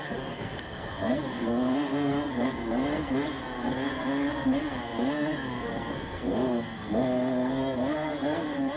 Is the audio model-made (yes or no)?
yes